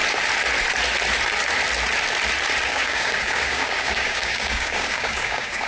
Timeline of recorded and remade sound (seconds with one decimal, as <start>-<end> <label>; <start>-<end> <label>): 0.0-2.7 recorded; 2.7-5.7 remade